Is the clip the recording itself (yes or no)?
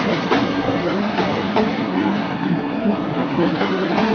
no